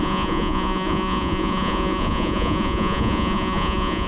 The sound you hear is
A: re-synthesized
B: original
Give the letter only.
A